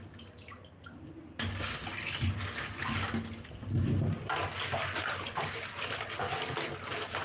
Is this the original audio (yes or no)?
yes